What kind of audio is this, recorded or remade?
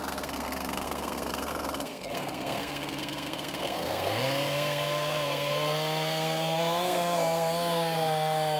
remade